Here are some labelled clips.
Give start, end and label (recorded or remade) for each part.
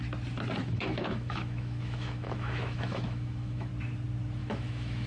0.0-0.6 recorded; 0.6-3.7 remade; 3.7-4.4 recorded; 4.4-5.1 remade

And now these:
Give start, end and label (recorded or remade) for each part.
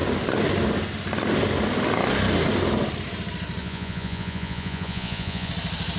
0.0-3.6 recorded; 3.6-5.5 remade; 5.5-6.0 recorded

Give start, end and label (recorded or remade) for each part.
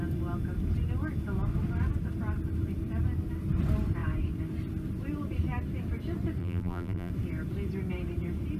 0.0-6.4 recorded; 6.4-7.1 remade; 7.1-8.6 recorded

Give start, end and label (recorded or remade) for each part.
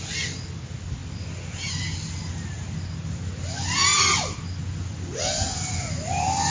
0.0-6.5 recorded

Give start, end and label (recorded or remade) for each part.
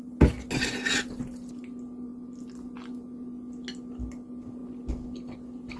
0.0-5.8 recorded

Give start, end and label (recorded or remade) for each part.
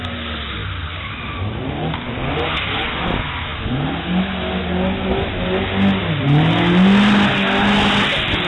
0.0-8.5 recorded